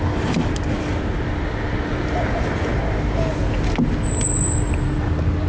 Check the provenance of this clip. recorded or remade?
recorded